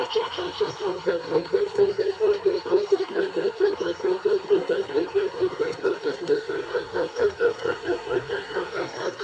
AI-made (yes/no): yes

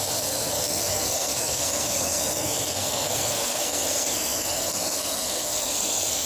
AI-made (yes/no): yes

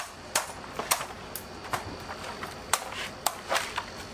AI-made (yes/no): no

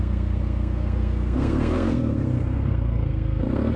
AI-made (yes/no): yes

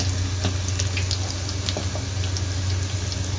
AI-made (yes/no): no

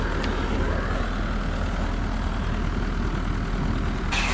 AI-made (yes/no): no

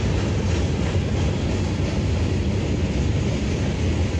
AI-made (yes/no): no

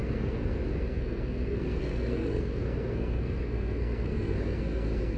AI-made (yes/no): yes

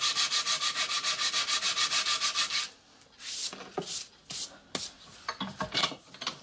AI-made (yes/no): no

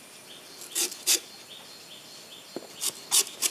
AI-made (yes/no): no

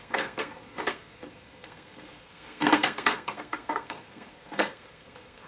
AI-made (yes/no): yes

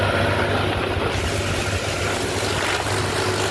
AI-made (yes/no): no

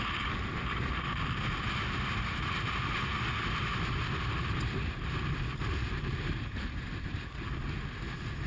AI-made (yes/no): no